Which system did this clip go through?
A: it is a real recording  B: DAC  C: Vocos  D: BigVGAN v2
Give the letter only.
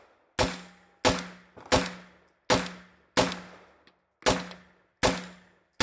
A